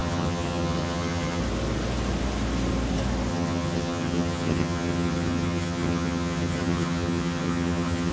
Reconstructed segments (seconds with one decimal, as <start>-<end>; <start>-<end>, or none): 0.0-1.4; 3.3-8.1